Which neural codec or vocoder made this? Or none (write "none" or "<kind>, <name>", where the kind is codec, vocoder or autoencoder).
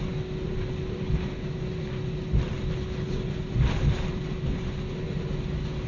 none